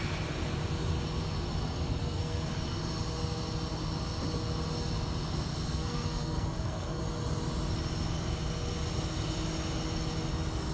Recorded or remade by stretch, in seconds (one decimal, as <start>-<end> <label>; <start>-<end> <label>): 0.0-2.0 recorded; 2.0-2.5 remade; 2.5-5.5 recorded; 5.5-7.0 remade; 7.0-10.7 recorded